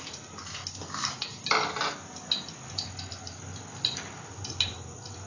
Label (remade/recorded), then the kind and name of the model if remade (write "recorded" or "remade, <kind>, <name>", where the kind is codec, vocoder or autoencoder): recorded